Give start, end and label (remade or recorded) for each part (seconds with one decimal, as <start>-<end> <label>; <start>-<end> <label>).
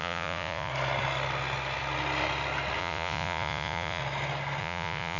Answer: 0.0-0.7 remade; 0.7-2.8 recorded; 2.8-4.0 remade; 4.0-4.6 recorded; 4.6-5.2 remade